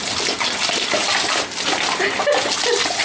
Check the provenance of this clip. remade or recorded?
recorded